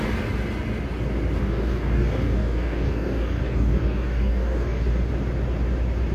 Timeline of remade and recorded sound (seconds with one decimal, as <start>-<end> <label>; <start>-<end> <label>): 0.0-1.4 recorded; 1.4-5.1 remade; 5.1-6.1 recorded